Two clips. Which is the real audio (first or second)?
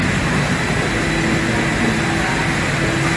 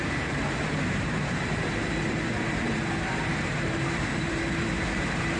first